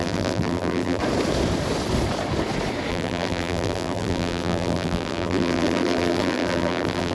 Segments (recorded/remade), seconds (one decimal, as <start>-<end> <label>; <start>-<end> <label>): 0.0-1.0 remade; 1.0-2.9 recorded; 2.9-7.1 remade